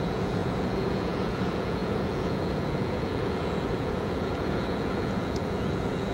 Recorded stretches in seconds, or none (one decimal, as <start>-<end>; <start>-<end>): none